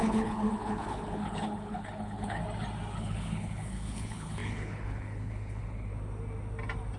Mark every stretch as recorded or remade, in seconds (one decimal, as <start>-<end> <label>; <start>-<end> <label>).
0.0-2.4 remade; 2.4-3.0 recorded; 3.0-5.9 remade; 5.9-7.0 recorded